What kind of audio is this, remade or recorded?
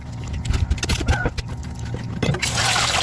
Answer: recorded